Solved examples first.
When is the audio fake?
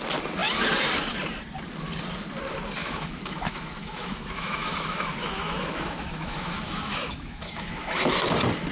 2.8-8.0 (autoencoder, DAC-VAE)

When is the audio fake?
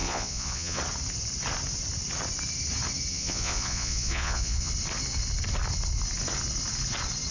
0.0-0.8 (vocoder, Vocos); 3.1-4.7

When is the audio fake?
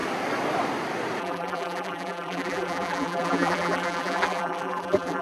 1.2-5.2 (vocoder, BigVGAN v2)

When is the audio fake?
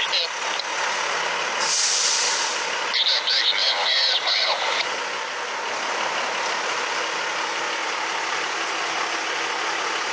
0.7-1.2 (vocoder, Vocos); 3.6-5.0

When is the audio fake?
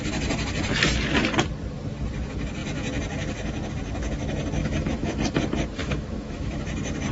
4.6-5.2 (autoencoder, DAC-VAE); 5.8-6.6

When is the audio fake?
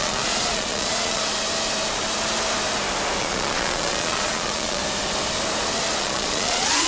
0.0-1.2 (vocoder, Vocos); 3.2-4.8; 6.0-6.9